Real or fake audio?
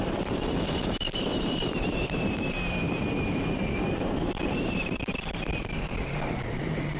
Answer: fake